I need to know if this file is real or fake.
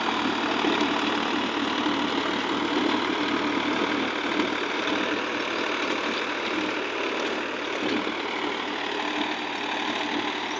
real